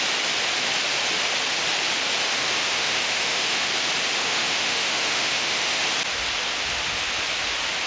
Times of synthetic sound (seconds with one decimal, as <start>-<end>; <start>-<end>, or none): 2.4-3.7; 4.2-5.9